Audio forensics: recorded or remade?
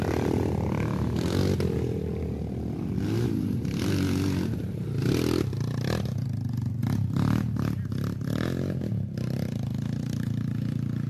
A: recorded